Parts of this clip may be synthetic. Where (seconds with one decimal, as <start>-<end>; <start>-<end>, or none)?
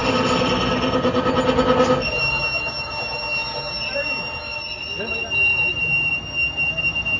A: 0.0-1.3; 5.5-6.1